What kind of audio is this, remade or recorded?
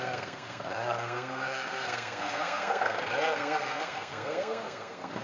remade